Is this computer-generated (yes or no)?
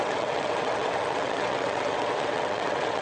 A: yes